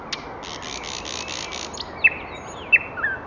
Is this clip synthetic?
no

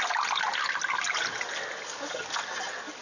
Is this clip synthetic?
no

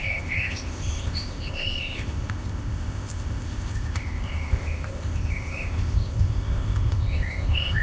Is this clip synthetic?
yes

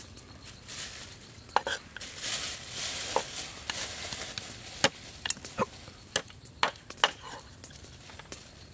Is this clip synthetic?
no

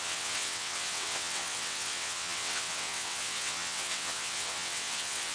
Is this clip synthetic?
yes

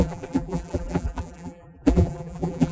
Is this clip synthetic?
yes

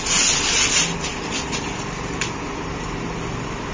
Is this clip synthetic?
no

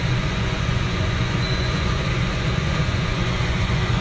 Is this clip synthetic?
yes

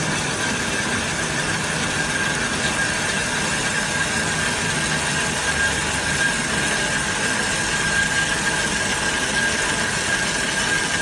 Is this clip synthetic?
no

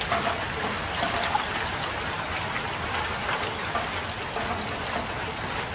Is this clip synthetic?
no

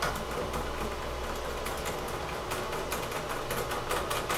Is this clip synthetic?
no